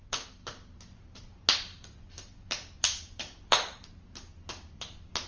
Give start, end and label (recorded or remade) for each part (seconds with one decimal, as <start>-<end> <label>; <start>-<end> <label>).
0.0-1.7 recorded; 1.7-3.9 remade; 3.9-5.3 recorded